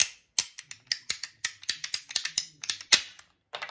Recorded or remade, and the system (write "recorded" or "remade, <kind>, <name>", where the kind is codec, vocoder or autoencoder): recorded